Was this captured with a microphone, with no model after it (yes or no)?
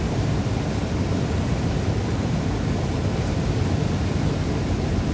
yes